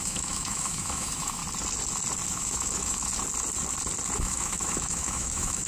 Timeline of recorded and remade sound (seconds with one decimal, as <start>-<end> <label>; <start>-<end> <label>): 0.0-1.4 remade; 1.4-2.3 recorded; 2.3-3.1 remade; 3.1-4.2 recorded; 4.2-5.7 remade

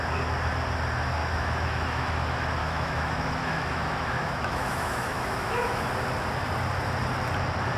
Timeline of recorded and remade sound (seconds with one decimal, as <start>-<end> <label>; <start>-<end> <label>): 0.0-1.2 recorded; 1.2-2.1 remade; 2.1-2.6 recorded; 2.6-5.9 remade; 5.9-7.8 recorded

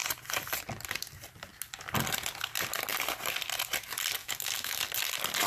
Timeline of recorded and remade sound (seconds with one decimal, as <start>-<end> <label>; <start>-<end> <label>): 0.0-4.2 recorded; 4.2-4.8 remade; 4.8-5.5 recorded

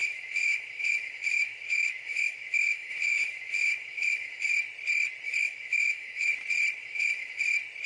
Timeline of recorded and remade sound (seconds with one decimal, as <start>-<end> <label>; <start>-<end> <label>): 0.0-4.5 remade; 4.5-5.4 recorded; 5.4-6.3 remade; 6.3-6.8 recorded; 6.8-7.4 remade; 7.4-7.9 recorded